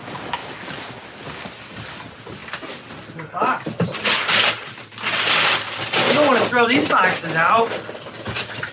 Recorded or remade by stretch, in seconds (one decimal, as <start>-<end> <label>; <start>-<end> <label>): 0.0-8.7 recorded